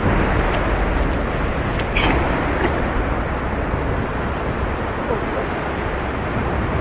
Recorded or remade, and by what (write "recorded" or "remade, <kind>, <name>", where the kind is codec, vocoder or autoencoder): recorded